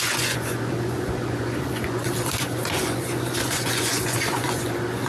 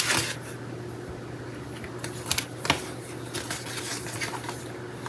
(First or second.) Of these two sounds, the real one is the second